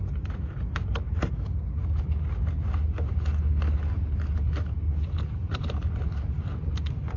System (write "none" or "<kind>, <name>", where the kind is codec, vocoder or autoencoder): none